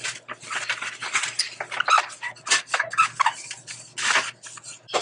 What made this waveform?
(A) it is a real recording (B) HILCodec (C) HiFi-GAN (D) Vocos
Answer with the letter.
A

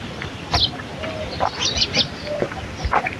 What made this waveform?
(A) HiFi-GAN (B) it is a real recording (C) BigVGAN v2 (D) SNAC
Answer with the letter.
B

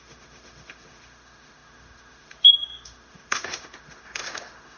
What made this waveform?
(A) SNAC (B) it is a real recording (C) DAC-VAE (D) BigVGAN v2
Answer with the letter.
C